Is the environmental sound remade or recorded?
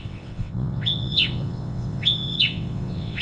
remade